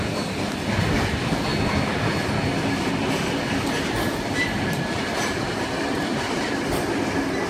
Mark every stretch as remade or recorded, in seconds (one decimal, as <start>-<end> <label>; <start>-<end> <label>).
0.0-7.5 recorded